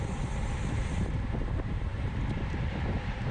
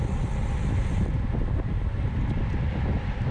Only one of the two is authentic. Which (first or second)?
second